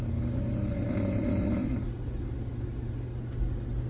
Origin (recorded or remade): recorded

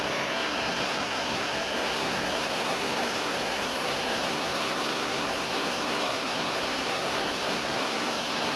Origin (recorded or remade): remade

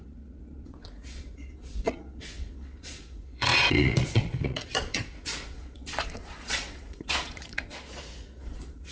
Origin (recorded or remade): remade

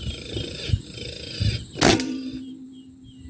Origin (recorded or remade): recorded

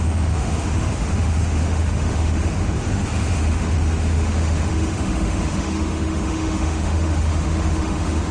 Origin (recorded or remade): remade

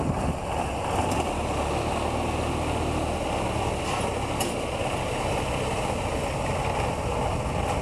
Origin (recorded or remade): recorded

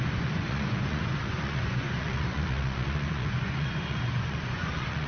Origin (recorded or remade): remade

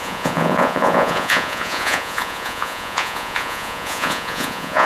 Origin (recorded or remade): remade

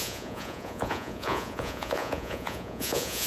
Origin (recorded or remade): remade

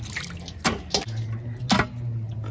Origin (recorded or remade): recorded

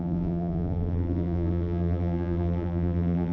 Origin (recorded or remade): remade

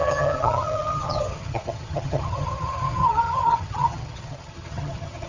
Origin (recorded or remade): remade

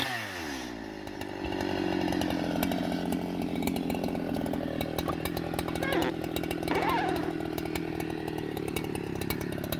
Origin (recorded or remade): recorded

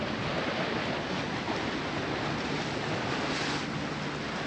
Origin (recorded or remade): recorded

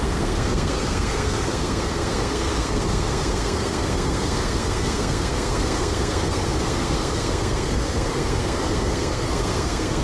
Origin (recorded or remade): remade